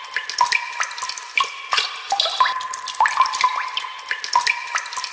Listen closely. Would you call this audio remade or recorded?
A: recorded